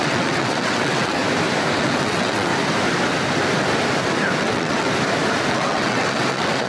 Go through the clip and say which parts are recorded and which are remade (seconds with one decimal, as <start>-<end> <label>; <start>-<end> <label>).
0.0-1.2 remade; 1.2-1.8 recorded; 1.8-2.5 remade; 2.5-4.4 recorded; 4.4-4.9 remade; 4.9-5.5 recorded; 5.5-6.7 remade